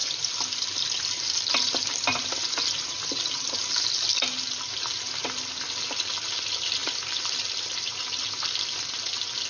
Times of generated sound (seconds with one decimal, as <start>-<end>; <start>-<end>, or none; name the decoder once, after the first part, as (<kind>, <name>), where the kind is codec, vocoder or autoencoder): 0.0-3.7 (vocoder, BigVGAN v2); 6.8-8.2